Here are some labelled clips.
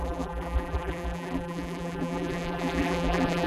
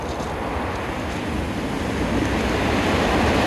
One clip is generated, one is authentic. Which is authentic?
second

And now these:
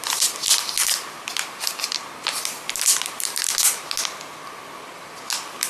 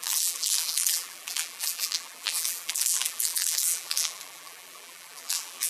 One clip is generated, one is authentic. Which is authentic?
first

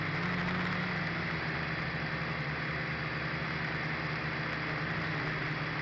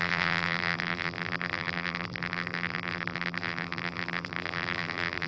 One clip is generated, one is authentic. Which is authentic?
first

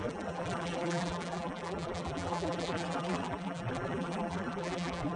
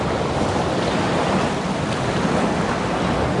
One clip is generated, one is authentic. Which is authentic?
second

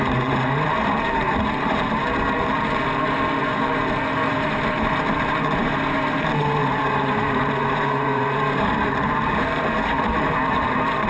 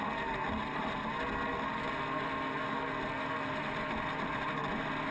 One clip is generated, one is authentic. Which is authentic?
second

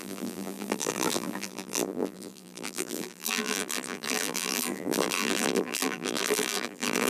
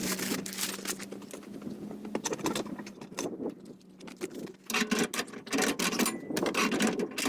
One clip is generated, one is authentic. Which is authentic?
second